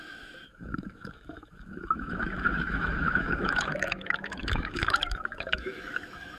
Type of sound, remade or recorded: remade